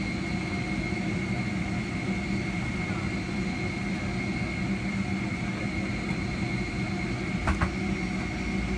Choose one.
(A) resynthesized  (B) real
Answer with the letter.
B